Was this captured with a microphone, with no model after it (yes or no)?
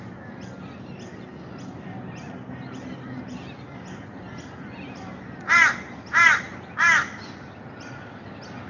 yes